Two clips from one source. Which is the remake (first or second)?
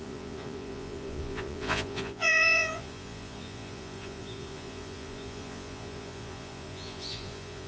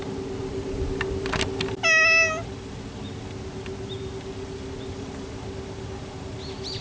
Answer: first